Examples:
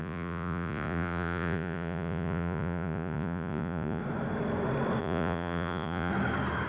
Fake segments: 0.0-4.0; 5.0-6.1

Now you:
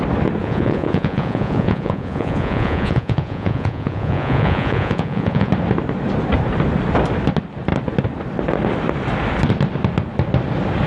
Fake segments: 0.4-5.5

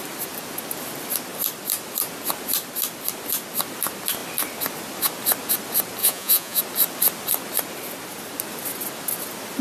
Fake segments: 6.0-6.6

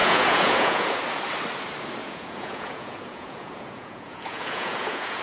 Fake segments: 0.0-1.0; 2.0-5.2

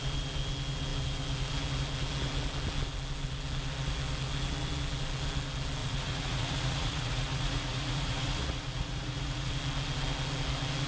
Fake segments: 5.8-9.5

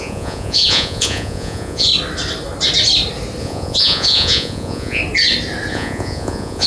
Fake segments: 0.0-1.9; 3.4-5.0; 5.7-6.7